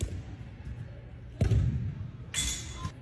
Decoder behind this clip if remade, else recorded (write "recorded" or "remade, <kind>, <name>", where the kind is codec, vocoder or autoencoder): recorded